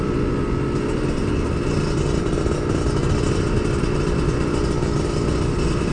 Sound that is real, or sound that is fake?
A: real